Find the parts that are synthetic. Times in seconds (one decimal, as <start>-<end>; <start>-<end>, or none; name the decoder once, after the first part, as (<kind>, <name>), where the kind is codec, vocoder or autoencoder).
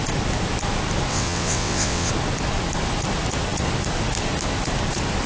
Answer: 1.1-2.1 (vocoder, WaveNeXt)